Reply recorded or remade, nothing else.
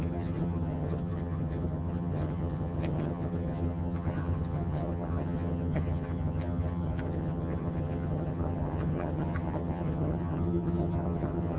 remade